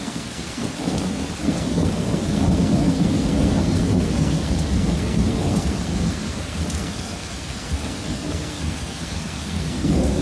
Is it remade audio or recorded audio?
remade